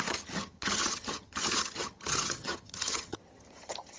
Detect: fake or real fake